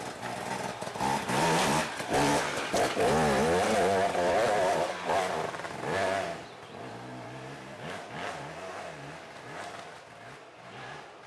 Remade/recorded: recorded